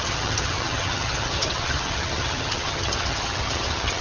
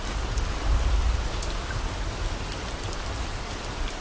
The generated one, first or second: first